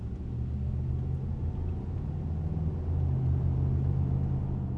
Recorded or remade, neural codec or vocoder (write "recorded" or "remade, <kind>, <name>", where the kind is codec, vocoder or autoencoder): recorded